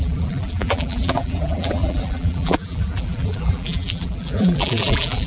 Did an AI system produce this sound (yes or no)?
yes